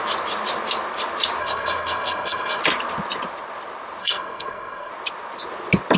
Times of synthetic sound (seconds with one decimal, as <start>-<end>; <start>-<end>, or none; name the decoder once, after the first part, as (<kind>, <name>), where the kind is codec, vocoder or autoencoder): 1.4-2.6 (codec, SNAC); 4.0-4.9